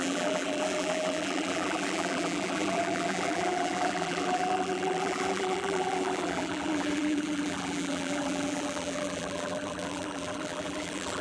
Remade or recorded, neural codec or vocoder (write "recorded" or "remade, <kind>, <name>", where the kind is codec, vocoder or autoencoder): remade, vocoder, BigVGAN v2